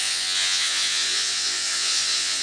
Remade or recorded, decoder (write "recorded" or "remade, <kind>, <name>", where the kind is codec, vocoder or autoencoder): remade, vocoder, Vocos